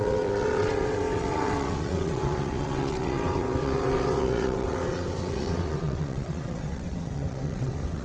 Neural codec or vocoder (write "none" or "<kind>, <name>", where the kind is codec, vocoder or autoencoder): vocoder, WaveNeXt